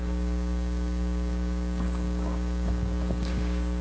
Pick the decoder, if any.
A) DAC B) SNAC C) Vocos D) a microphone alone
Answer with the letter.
A